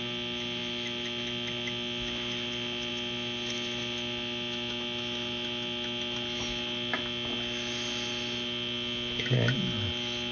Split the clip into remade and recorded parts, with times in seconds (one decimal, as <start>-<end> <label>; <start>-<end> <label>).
0.0-10.3 recorded